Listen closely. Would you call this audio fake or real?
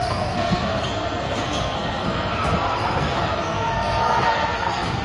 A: fake